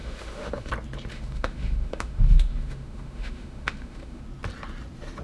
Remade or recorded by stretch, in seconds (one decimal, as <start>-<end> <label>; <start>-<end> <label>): 0.0-0.7 remade; 0.7-1.1 recorded; 1.1-4.2 remade; 4.2-5.2 recorded